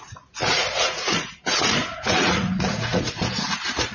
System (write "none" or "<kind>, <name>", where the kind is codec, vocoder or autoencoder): vocoder, Vocos